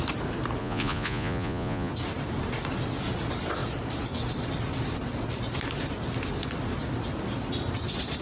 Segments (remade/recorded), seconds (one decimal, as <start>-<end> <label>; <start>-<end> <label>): 0.0-0.6 recorded; 0.6-1.9 remade; 1.9-8.2 recorded